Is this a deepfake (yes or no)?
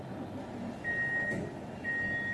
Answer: no